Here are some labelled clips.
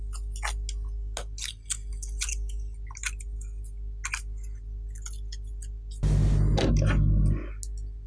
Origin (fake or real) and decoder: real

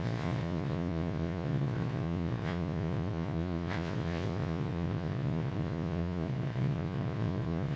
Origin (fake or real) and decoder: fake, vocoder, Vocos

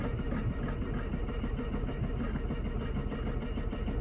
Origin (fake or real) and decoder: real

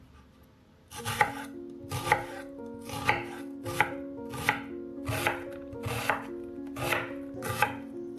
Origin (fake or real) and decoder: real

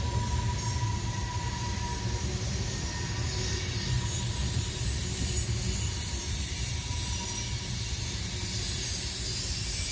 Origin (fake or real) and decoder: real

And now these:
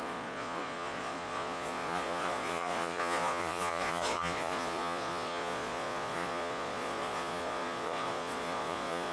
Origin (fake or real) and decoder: fake, vocoder, Vocos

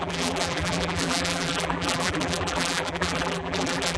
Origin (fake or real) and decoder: fake, vocoder, BigVGAN v2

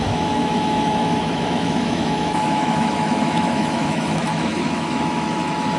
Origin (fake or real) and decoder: fake, autoencoder, DAC-VAE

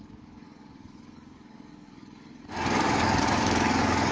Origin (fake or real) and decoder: fake, codec, DAC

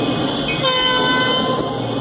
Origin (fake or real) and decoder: real